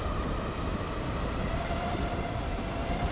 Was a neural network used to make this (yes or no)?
yes